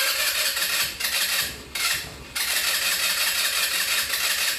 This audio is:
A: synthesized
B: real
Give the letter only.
B